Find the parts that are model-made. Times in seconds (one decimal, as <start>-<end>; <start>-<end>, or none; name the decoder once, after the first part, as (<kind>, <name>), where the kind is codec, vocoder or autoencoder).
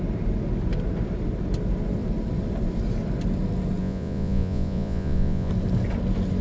3.8-5.5 (vocoder, Vocos)